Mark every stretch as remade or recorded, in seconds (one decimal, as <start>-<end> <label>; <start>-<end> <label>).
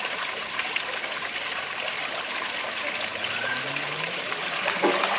0.0-3.1 recorded; 3.1-4.8 remade; 4.8-5.2 recorded